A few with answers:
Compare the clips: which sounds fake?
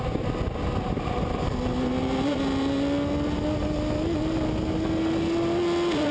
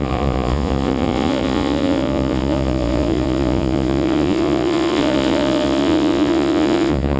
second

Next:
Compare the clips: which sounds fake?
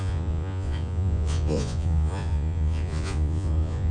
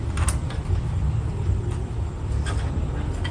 first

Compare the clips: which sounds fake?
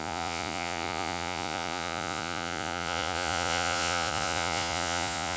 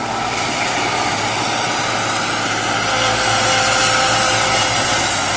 first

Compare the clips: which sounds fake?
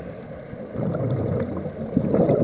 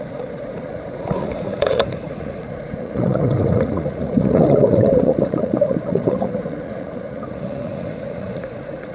second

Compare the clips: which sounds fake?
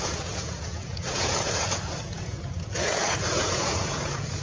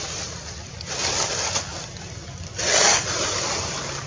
first